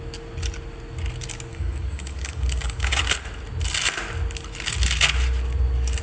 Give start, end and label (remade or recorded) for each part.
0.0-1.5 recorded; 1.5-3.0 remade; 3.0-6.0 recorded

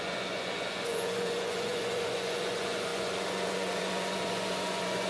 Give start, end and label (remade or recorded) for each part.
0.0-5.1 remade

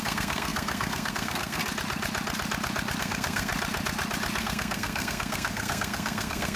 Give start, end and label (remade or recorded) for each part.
0.0-1.6 remade; 1.6-3.0 recorded; 3.0-3.5 remade; 3.5-4.4 recorded; 4.4-6.6 remade